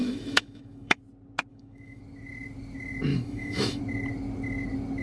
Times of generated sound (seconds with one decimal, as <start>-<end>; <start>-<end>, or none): 0.0-1.0; 1.5-2.0; 3.1-3.8